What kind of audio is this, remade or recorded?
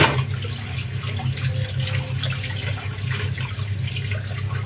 recorded